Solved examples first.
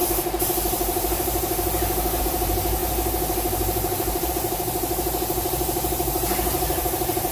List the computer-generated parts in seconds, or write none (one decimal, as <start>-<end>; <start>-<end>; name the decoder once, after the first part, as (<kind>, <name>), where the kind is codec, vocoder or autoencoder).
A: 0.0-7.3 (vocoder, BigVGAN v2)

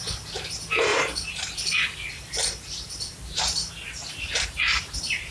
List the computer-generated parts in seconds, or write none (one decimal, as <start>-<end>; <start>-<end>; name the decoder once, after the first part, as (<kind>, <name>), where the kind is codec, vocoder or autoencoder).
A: 0.9-4.1 (vocoder, BigVGAN v2)

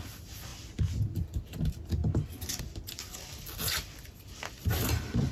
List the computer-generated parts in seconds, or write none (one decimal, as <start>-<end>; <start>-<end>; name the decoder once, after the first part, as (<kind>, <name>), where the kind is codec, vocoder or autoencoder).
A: 0.0-0.5 (vocoder, BigVGAN v2); 1.0-2.0; 2.6-5.3

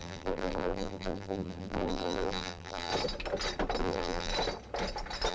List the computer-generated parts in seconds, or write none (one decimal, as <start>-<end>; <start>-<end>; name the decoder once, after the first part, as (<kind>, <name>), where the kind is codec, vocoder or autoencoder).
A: 0.0-2.9 (vocoder, BigVGAN v2); 3.8-4.3